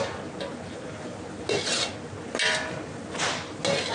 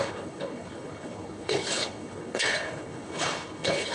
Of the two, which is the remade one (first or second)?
second